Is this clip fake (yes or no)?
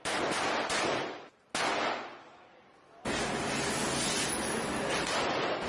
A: no